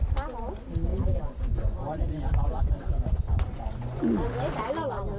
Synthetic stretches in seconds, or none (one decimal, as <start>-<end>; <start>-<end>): 0.9-4.0